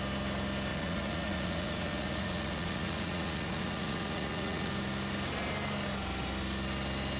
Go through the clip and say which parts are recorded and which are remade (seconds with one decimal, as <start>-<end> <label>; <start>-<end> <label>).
0.0-0.7 recorded; 0.7-4.7 remade; 4.7-7.2 recorded